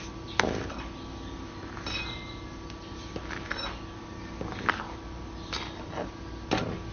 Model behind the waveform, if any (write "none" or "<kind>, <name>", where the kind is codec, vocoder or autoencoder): none